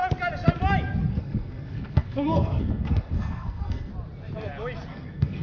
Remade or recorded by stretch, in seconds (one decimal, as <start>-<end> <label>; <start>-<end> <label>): 0.0-1.1 recorded; 1.1-3.9 remade; 3.9-4.9 recorded; 4.9-5.4 remade